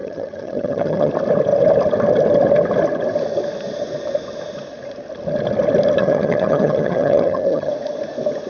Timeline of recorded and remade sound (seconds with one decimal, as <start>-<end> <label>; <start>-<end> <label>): 0.0-1.1 remade; 1.1-6.0 recorded; 6.0-7.7 remade; 7.7-8.5 recorded